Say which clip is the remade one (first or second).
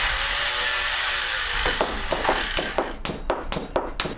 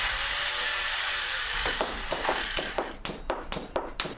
second